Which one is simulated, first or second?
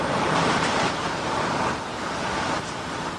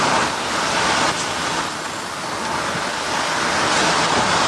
first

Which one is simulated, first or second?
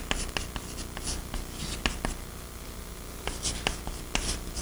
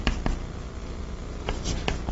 second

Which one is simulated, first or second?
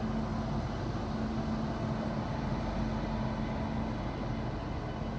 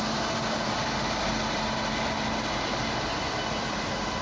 second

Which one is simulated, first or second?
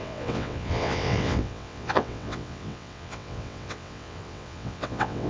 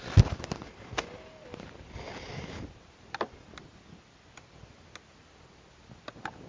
first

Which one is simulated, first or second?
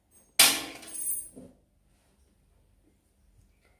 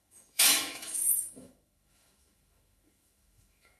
second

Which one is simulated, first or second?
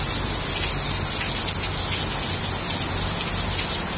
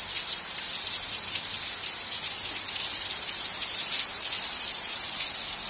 second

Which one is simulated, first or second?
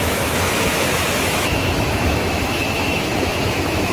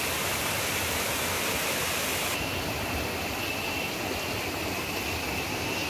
first